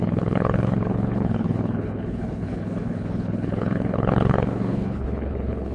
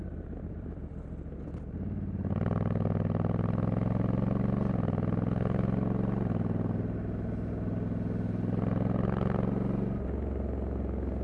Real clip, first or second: second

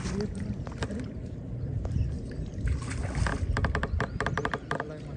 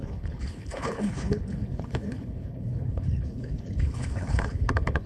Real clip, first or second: first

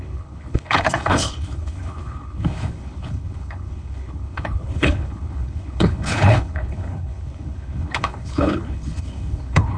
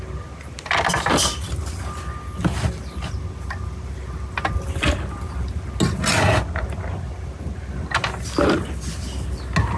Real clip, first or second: second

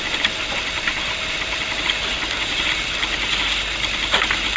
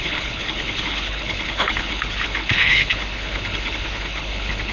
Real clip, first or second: first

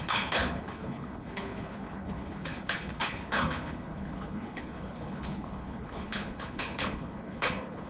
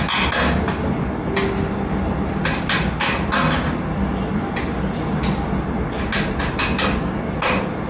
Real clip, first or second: second